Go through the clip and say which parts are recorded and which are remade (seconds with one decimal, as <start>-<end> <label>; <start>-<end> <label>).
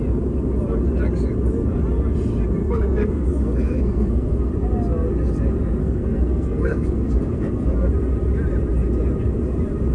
0.0-2.6 recorded; 2.6-4.5 remade; 4.5-5.8 recorded; 5.8-7.9 remade; 7.9-9.9 recorded